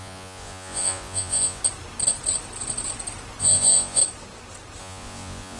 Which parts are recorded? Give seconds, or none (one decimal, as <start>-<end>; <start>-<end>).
1.6-3.4; 4.0-4.8